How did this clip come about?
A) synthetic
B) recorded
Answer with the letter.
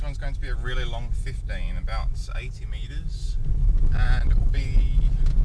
B